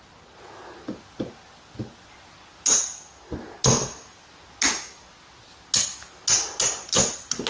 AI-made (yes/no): no